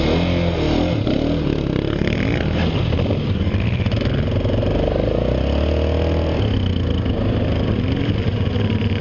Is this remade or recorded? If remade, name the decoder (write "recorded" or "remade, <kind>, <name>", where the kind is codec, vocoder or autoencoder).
recorded